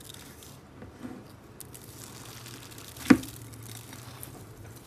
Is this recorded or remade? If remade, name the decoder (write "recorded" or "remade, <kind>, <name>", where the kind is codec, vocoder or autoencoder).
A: recorded